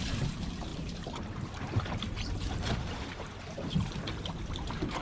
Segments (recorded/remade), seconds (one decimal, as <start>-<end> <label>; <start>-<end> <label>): 0.0-0.7 recorded; 0.7-3.7 remade; 3.7-5.0 recorded